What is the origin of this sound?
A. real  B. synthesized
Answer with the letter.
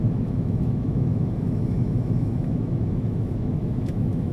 B